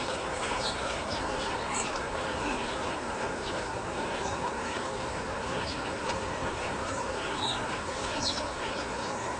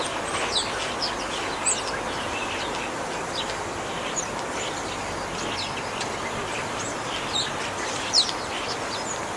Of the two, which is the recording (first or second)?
second